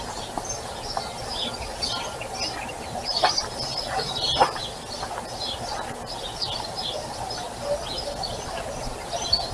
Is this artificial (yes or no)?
no